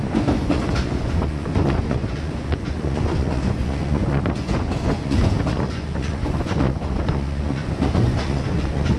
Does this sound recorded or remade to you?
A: remade